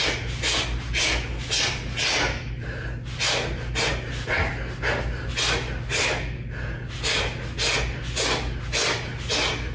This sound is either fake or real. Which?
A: real